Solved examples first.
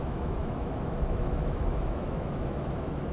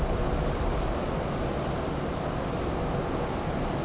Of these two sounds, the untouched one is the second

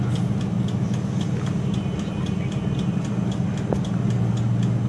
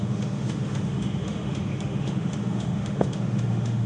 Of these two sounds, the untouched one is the first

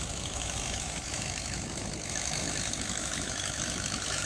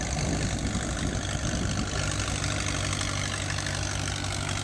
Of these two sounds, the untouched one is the second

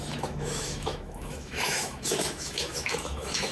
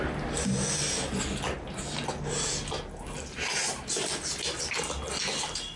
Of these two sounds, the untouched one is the second